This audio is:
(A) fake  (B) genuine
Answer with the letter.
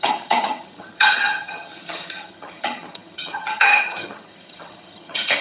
A